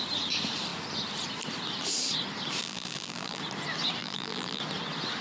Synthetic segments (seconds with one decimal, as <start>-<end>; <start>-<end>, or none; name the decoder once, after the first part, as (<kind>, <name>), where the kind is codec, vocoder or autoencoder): 2.6-3.4 (vocoder, BigVGAN v2); 4.0-4.6